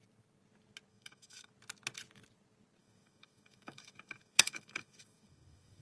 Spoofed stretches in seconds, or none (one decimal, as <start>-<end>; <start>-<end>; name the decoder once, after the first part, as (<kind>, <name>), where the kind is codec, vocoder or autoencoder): 0.9-1.5 (autoencoder, DAC-VAE); 2.8-5.8